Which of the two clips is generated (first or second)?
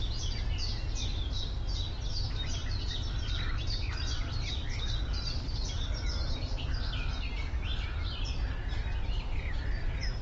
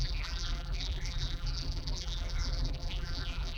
second